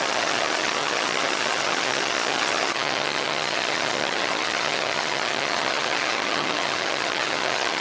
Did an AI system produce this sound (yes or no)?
yes